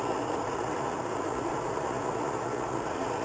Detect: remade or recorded remade